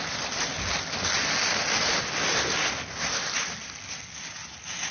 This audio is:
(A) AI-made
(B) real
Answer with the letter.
B